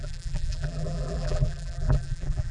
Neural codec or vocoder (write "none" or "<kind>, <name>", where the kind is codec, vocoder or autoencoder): vocoder, BigVGAN v2